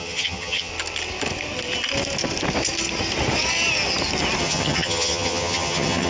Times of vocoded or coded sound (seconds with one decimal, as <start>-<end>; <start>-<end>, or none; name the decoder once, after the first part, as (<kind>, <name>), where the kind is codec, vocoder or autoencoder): 0.0-0.7 (vocoder, HiFi-GAN); 4.4-6.1